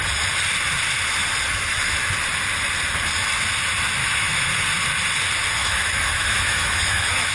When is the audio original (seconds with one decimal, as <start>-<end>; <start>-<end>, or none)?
0.0-4.0; 4.5-5.6

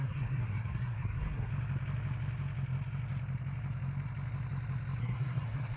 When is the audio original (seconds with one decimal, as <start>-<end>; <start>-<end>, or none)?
1.5-5.0

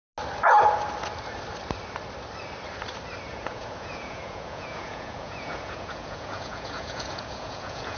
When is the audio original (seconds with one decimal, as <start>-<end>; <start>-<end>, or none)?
0.0-3.3